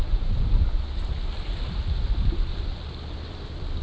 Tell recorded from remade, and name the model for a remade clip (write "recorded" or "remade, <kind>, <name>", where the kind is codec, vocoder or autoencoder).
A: remade, vocoder, BigVGAN v2